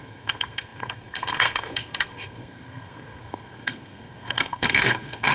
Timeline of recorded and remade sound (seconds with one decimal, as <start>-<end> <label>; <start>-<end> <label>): 0.0-5.3 remade